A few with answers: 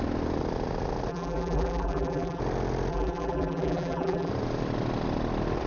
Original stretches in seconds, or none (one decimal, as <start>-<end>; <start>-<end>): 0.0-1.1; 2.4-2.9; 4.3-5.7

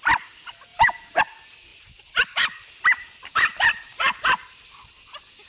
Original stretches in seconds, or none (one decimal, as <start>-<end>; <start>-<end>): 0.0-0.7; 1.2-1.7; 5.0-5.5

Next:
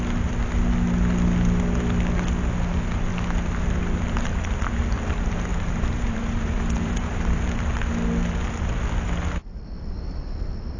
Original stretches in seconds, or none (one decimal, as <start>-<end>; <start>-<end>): 0.0-5.5; 7.6-10.8

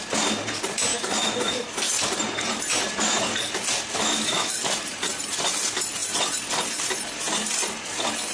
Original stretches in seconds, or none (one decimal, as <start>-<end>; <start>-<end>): 0.0-0.9; 1.8-3.9; 4.5-8.3